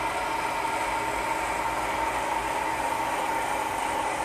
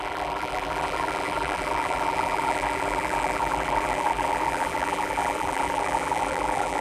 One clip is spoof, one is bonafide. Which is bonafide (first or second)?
first